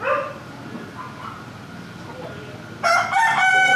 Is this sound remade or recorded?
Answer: recorded